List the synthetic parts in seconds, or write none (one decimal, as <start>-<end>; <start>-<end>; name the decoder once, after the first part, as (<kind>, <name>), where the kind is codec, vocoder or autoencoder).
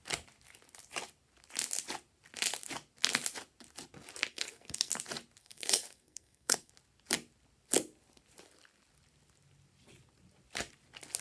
4.3-4.9 (codec, SNAC); 5.4-6.7